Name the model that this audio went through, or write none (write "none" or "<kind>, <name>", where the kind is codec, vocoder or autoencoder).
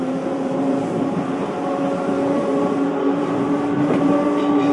vocoder, BigVGAN v2